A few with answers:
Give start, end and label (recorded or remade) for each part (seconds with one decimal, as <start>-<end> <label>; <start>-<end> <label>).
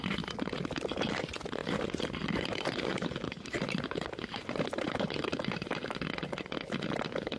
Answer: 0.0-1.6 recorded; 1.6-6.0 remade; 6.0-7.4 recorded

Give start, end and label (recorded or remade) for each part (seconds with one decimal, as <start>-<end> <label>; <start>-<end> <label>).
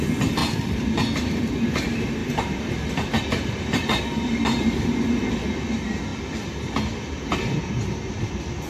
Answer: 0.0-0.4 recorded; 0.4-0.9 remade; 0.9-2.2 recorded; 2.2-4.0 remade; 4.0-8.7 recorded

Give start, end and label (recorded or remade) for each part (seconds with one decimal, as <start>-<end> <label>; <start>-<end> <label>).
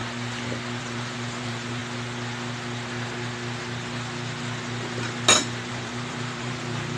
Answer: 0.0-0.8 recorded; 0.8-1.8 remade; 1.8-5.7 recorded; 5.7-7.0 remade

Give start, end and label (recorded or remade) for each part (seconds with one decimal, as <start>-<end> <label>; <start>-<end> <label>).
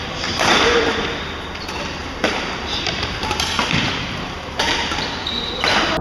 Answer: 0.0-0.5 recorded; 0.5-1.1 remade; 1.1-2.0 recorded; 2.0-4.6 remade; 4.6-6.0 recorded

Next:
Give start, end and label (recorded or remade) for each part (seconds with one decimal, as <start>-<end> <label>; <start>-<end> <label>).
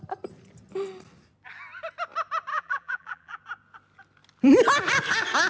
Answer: 0.0-2.5 recorded; 2.5-3.4 remade; 3.4-5.5 recorded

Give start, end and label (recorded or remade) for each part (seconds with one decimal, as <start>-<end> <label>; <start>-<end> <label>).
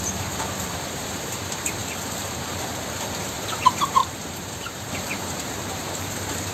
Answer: 0.0-1.8 remade; 1.8-3.2 recorded; 3.2-6.5 remade